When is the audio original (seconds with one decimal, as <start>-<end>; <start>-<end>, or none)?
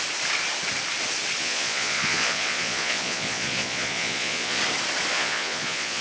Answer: 0.0-1.4; 4.6-5.1